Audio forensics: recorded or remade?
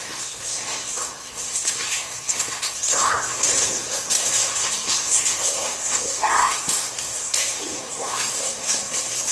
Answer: remade